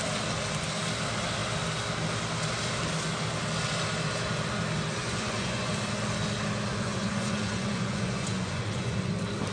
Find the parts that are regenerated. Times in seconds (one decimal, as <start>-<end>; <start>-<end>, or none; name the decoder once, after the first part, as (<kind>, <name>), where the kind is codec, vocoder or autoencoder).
5.0-5.7 (vocoder, Vocos); 6.7-9.1